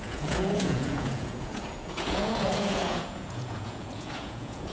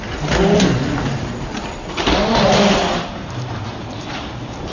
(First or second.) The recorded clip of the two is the second